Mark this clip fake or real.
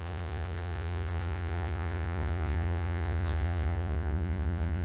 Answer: fake